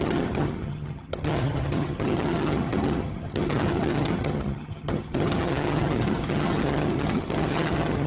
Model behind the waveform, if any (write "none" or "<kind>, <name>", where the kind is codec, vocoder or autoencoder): vocoder, HiFi-GAN